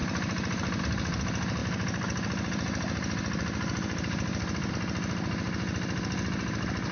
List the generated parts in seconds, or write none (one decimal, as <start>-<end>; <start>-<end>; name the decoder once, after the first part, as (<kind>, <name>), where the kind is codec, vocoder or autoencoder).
none